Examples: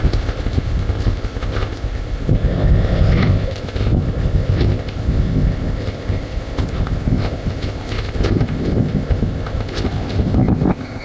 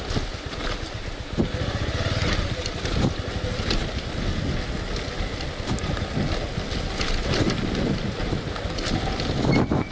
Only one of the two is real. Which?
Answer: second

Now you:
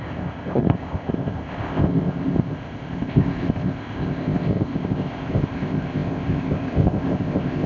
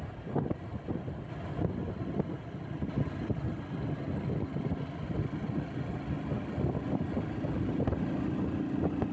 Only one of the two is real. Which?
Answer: second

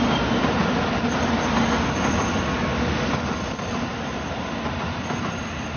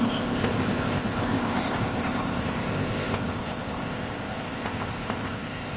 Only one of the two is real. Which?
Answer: first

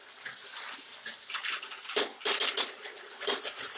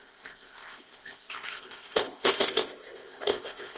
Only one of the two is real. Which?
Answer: first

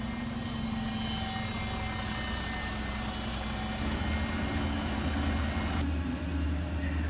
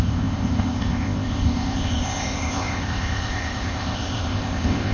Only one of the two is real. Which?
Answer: first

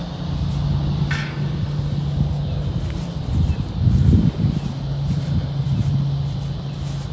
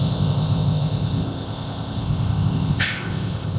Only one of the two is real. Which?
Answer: first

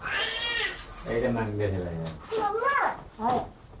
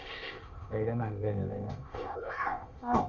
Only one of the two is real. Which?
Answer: first